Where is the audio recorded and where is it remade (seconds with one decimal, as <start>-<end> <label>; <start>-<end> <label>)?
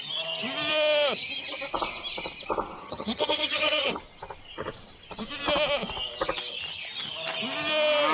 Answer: 0.0-2.8 recorded; 2.8-4.0 remade; 4.0-8.1 recorded